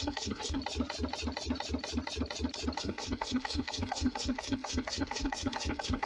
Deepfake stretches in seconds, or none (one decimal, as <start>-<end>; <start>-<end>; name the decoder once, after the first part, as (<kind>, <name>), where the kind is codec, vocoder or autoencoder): 0.0-0.6 (codec, SNAC); 2.8-6.1